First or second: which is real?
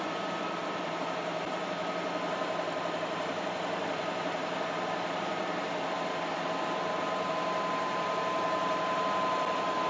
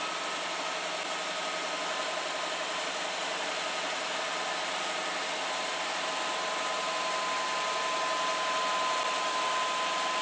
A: second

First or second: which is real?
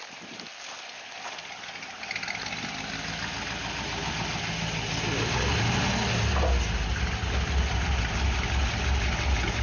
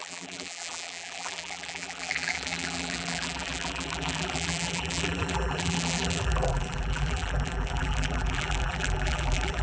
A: first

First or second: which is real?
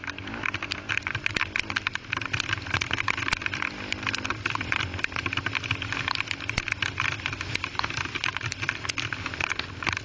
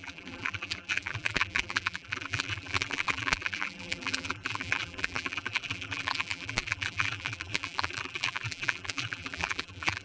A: first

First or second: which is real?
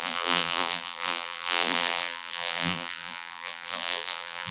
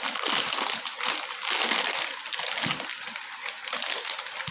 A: second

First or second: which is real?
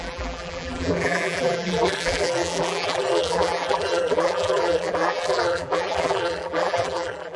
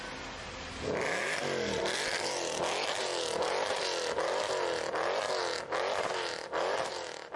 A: second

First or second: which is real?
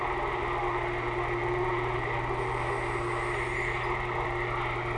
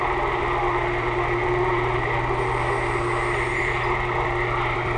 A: first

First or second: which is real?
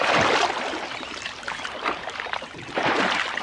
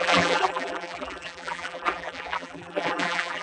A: first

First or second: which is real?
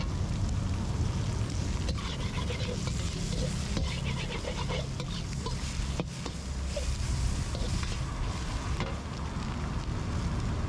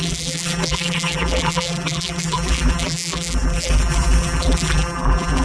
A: first